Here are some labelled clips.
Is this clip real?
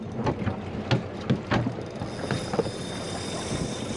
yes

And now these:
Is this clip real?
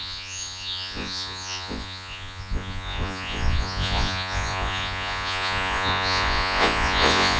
no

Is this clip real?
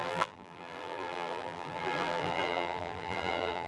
no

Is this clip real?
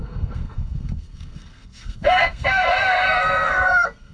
no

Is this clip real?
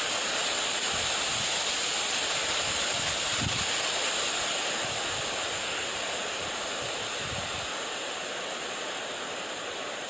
yes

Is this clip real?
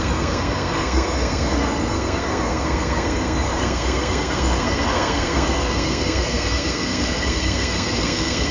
no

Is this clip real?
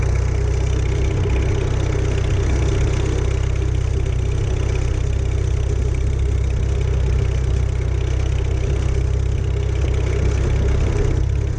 yes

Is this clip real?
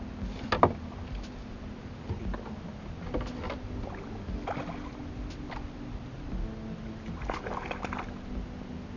yes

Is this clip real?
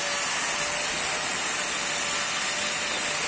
yes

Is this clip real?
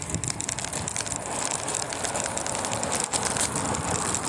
yes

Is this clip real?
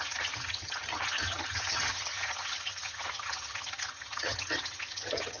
no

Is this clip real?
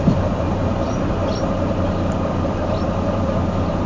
no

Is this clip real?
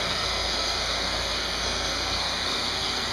no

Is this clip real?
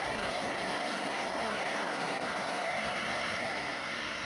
no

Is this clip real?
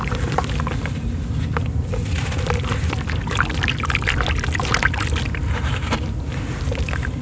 yes